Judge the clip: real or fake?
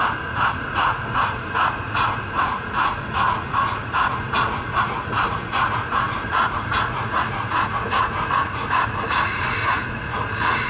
fake